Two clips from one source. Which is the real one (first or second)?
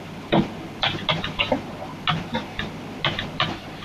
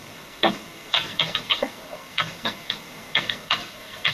first